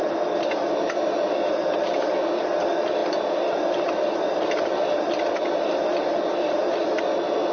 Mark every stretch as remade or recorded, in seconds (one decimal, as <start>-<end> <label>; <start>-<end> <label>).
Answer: 0.0-7.5 recorded